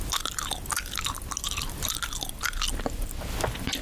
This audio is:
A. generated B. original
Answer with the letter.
B